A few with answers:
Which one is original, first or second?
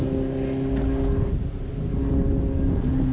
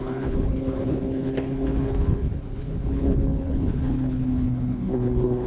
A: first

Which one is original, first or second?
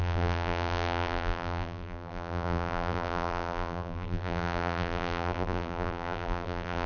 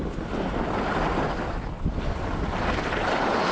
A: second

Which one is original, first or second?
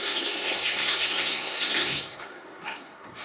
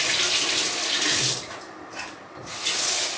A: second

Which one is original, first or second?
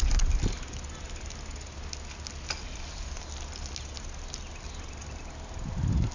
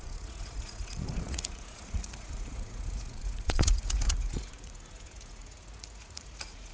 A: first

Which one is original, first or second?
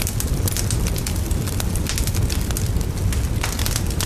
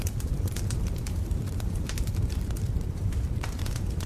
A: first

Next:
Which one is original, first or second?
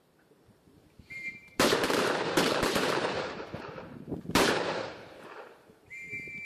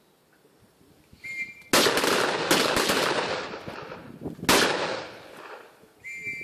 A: second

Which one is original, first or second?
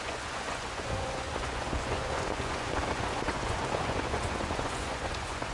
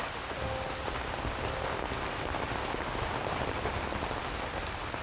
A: second